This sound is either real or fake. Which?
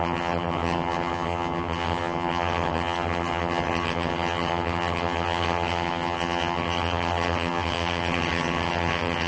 fake